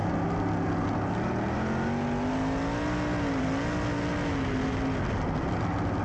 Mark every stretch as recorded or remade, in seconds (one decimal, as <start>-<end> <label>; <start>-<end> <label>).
0.0-6.0 recorded